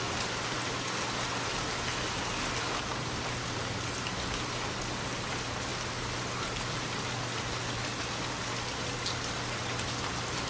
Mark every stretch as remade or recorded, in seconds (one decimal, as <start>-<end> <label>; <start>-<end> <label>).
0.0-10.5 recorded